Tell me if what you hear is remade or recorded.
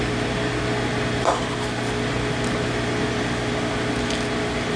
recorded